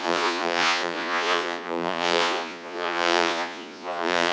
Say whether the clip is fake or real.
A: fake